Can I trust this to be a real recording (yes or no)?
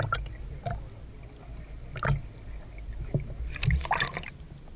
yes